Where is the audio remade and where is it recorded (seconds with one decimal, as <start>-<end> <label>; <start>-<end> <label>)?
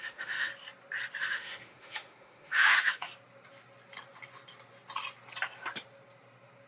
0.0-0.5 remade; 0.5-1.2 recorded; 1.2-3.1 remade; 3.1-6.7 recorded